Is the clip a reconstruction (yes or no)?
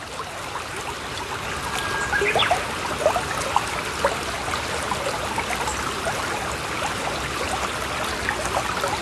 no